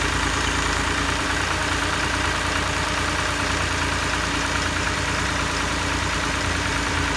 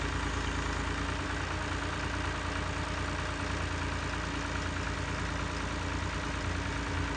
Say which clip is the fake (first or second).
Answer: first